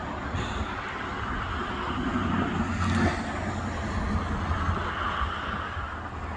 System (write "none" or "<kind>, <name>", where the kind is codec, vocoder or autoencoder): none